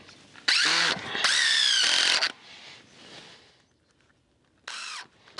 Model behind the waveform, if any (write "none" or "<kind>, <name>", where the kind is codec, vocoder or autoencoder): none